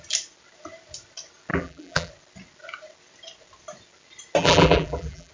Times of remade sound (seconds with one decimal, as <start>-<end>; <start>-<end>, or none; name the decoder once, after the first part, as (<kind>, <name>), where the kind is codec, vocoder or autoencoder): 1.5-2.1 (vocoder, BigVGAN v2); 4.4-5.3